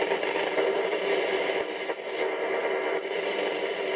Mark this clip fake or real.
real